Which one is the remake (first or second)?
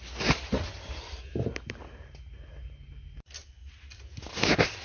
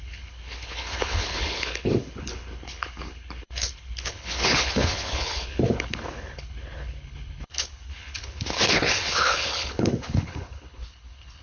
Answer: second